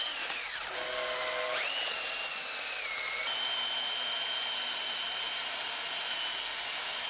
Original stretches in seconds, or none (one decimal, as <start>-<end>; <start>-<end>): 0.0-7.1